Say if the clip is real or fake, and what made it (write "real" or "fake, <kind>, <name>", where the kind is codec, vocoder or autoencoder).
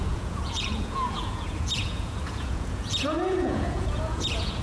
fake, vocoder, Vocos